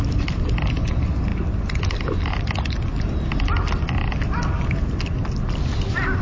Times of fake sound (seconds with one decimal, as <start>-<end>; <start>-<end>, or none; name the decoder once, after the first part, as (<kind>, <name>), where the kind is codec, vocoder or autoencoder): none